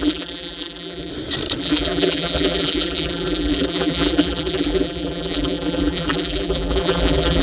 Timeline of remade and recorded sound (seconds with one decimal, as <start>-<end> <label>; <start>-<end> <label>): 0.0-1.1 remade; 1.1-1.6 recorded; 1.6-7.4 remade